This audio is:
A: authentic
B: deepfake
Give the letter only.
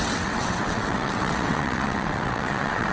B